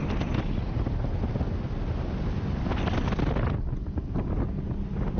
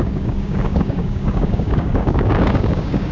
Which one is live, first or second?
first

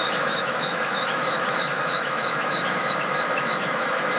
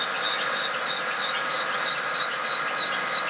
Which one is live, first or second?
second